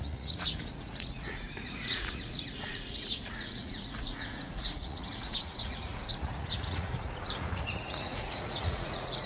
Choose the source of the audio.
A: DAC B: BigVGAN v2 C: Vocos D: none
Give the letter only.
C